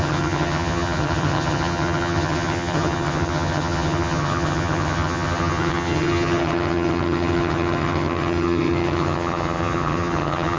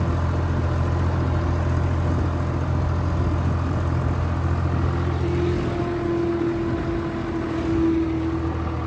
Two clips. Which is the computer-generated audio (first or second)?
first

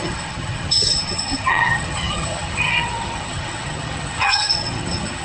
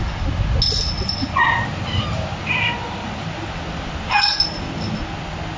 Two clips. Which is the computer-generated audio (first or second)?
first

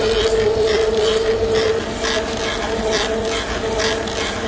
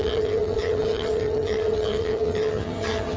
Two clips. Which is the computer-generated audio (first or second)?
second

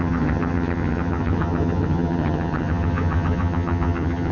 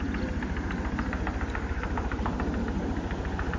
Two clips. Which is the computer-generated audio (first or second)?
first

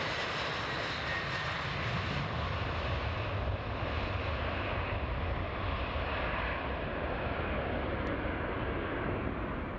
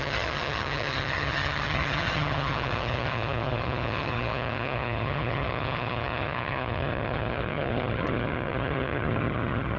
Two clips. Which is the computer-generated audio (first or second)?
second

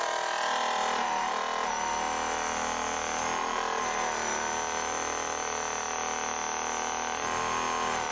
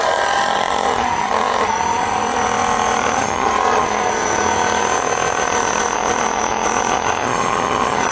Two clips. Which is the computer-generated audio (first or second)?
second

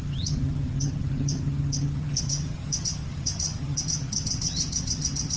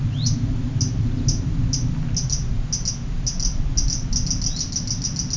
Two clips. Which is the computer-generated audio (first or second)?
first